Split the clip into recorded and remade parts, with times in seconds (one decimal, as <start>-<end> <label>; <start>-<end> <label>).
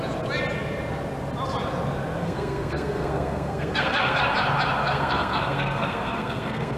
0.0-2.2 recorded; 2.2-4.2 remade; 4.2-4.8 recorded; 4.8-6.8 remade